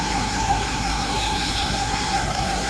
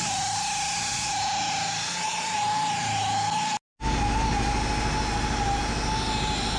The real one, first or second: second